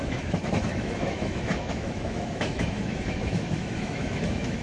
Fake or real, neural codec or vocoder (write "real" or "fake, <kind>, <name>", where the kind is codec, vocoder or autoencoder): fake, autoencoder, DAC-VAE